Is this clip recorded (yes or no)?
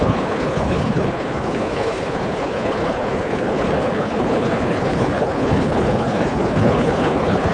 no